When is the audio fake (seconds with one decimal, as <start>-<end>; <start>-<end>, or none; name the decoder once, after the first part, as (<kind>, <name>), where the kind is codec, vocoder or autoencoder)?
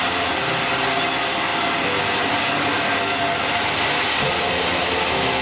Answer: none